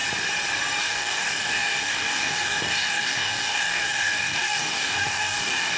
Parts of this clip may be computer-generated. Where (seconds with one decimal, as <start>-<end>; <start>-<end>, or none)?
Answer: 0.8-5.8